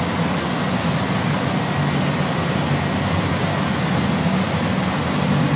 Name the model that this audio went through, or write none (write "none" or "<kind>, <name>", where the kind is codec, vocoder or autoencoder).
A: none